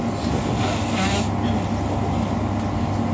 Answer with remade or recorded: recorded